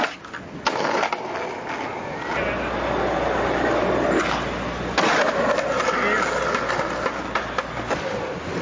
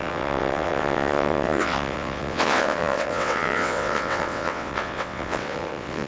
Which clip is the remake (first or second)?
second